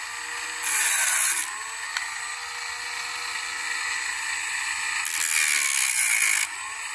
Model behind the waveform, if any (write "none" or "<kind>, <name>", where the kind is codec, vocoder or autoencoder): none